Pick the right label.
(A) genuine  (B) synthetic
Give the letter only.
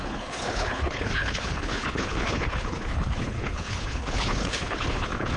B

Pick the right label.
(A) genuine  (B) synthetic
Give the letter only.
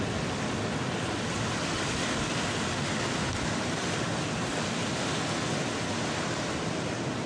A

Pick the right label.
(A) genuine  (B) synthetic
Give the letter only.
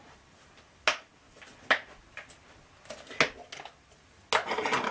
A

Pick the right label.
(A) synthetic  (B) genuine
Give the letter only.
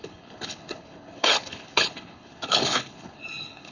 A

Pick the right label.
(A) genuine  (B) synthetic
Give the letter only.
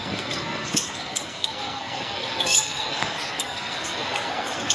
B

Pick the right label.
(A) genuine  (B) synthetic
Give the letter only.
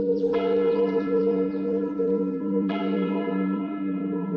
B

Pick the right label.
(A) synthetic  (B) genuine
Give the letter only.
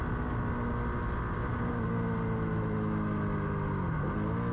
B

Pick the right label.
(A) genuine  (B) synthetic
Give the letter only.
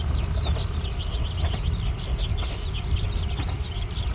A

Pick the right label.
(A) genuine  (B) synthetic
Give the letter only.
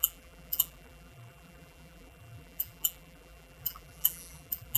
B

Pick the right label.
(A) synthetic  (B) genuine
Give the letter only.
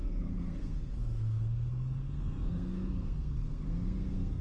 A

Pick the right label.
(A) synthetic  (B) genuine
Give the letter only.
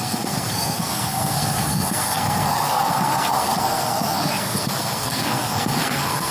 A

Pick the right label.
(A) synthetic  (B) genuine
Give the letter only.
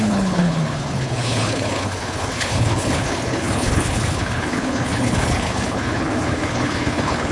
A